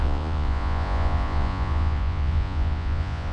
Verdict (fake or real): fake